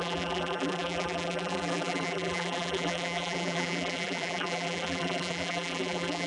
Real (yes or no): no